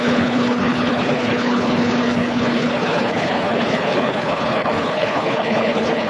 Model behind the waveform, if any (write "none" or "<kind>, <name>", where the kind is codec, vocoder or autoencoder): codec, HILCodec